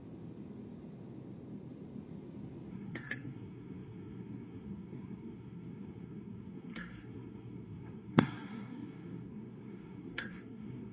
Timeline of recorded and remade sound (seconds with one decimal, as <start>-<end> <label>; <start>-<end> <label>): 0.0-2.7 recorded; 2.7-10.9 remade